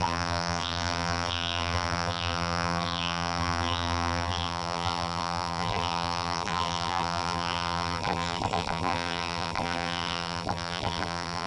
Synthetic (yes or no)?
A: yes